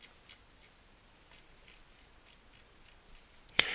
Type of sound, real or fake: real